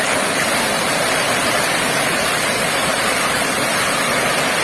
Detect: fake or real real